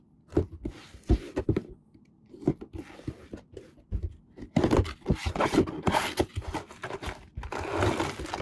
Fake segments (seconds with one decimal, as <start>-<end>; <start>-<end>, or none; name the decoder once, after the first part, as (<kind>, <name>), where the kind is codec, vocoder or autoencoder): none